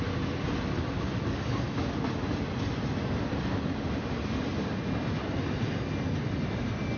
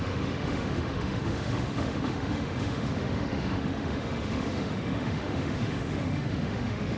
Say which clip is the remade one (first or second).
second